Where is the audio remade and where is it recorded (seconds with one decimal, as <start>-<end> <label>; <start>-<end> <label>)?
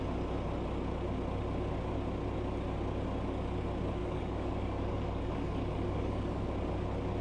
0.0-4.0 recorded; 4.0-6.5 remade; 6.5-7.2 recorded